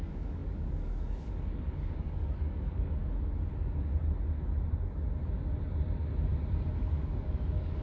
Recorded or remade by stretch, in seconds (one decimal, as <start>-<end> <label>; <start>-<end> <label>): 0.0-3.0 remade; 3.0-6.7 recorded; 6.7-7.8 remade